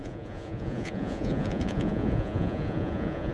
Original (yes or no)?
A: no